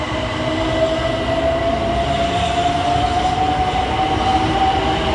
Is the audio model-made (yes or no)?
no